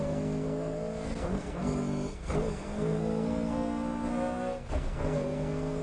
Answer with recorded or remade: remade